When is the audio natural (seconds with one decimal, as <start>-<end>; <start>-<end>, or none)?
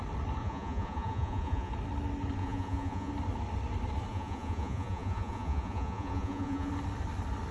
0.0-0.4; 1.7-2.4; 3.1-4.1; 6.7-7.5